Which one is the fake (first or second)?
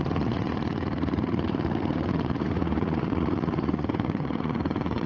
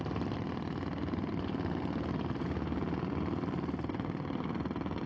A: first